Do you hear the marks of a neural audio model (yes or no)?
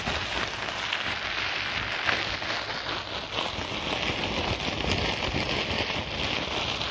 no